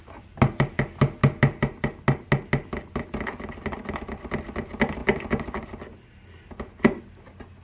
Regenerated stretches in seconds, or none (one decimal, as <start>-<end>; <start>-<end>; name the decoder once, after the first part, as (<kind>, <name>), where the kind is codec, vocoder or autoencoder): none

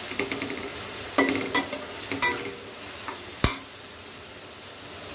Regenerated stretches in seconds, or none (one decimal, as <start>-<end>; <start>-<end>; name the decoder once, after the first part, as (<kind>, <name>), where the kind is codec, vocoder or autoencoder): 0.7-1.6 (vocoder, BigVGAN v2)

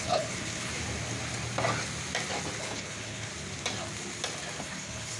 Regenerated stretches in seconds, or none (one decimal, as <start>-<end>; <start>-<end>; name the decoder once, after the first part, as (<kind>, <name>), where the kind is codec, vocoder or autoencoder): 0.0-0.7 (codec, HILCodec); 2.6-3.3; 4.6-5.2

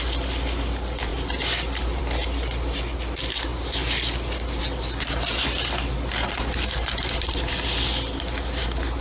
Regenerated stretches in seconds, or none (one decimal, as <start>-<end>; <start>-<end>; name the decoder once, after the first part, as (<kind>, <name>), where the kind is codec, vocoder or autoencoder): none